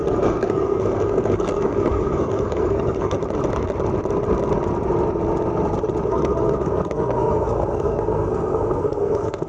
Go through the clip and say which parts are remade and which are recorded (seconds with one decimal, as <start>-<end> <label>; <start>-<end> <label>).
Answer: 0.0-3.2 remade; 3.2-6.1 recorded; 6.1-9.5 remade